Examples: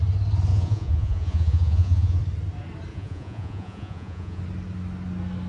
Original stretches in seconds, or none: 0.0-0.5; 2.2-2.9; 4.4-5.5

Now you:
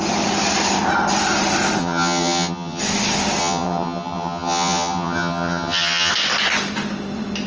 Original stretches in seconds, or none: 0.0-1.8; 2.8-3.4; 6.1-7.5

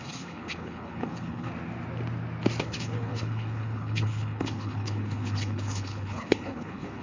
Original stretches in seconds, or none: 1.5-2.6